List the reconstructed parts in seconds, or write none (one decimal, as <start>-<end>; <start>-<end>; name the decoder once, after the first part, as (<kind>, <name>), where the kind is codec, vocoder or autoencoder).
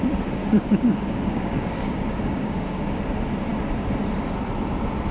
0.4-3.0 (codec, DAC)